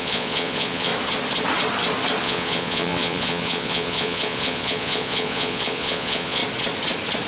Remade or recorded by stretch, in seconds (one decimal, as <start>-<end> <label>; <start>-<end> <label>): 0.0-0.9 remade; 0.9-2.2 recorded; 2.2-6.4 remade; 6.4-7.3 recorded